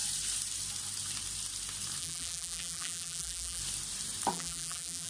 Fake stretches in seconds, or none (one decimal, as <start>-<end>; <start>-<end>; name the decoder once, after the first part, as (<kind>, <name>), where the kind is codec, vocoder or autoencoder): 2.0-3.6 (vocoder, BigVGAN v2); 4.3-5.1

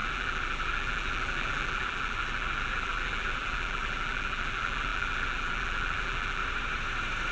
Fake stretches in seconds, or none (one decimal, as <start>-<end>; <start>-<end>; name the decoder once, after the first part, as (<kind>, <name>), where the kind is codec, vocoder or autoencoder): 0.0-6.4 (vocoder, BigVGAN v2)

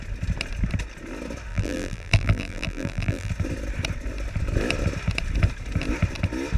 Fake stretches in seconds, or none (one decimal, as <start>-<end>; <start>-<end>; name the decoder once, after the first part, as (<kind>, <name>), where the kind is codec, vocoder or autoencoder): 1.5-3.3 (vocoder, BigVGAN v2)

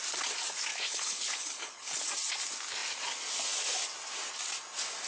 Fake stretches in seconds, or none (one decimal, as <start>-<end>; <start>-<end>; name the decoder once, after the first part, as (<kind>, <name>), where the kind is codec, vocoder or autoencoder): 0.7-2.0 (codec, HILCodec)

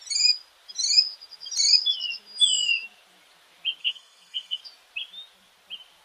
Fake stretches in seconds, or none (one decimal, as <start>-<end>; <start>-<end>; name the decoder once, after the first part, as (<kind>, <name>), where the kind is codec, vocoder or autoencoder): 3.8-4.6 (codec, SNAC)

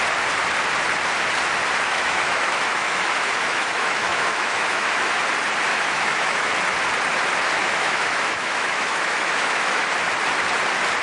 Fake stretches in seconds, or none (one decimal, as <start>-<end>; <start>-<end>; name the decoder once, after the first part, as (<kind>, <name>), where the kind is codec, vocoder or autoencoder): 1.9-5.2 (autoencoder, DAC-VAE); 5.7-6.6; 7.6-9.9